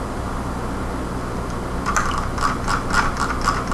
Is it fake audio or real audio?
real